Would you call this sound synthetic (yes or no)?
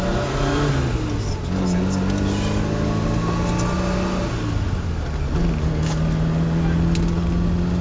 no